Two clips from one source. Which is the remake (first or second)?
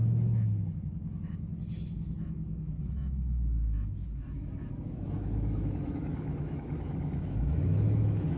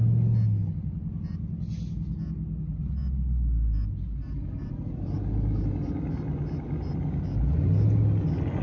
first